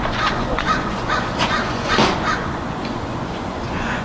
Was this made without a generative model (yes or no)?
no